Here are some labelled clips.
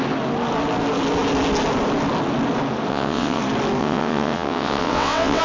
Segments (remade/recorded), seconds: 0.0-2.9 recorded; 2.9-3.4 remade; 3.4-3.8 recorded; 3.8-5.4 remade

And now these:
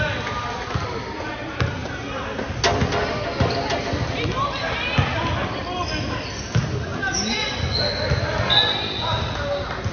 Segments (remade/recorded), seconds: 0.0-9.9 recorded

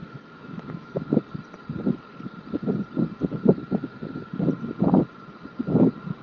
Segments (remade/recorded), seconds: 0.0-1.2 remade; 1.2-6.2 recorded